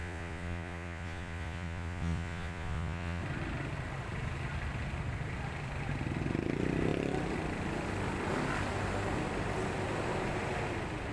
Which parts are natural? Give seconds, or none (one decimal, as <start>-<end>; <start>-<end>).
3.2-11.1